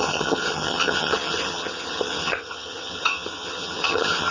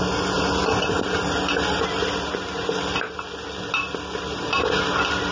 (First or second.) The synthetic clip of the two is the first